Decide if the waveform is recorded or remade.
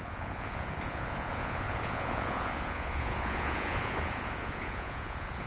remade